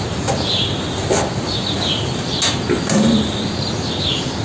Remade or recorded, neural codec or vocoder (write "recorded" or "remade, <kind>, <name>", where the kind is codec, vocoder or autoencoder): recorded